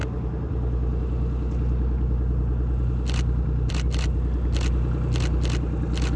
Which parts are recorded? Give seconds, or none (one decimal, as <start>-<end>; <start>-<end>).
0.0-6.2